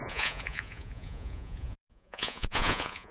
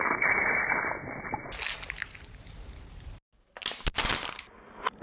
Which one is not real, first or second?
first